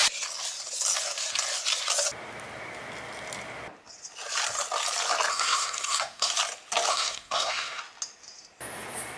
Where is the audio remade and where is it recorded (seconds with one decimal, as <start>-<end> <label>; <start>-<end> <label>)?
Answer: 0.0-5.3 recorded; 5.3-6.3 remade; 6.3-6.9 recorded; 6.9-7.8 remade; 7.8-9.2 recorded